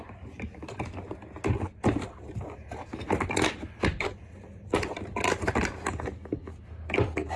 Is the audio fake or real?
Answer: real